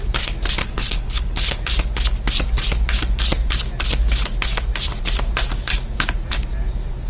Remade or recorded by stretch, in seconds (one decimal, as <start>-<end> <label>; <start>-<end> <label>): 0.0-0.6 recorded; 0.6-1.6 remade; 1.6-7.1 recorded